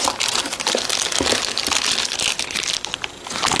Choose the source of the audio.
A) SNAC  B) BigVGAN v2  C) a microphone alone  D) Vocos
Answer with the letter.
C